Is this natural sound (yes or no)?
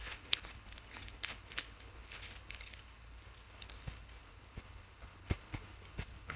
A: no